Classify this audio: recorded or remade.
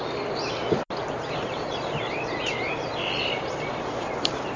recorded